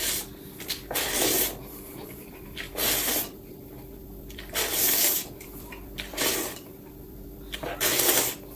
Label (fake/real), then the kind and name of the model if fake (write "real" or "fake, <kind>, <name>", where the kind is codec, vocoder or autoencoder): fake, vocoder, BigVGAN v2